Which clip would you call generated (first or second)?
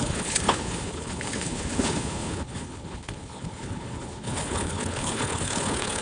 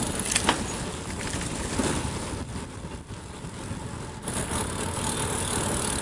first